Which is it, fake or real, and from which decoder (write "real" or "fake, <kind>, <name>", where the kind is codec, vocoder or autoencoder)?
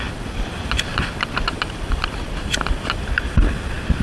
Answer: fake, vocoder, BigVGAN v2